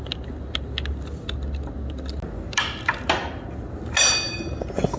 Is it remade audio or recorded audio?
recorded